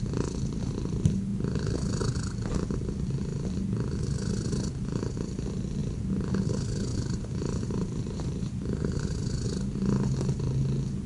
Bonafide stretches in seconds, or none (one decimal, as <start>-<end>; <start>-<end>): 0.0-6.9; 10.4-11.1